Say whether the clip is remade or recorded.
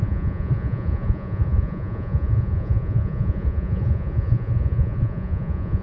remade